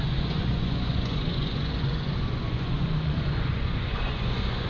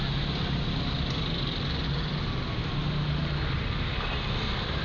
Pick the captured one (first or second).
second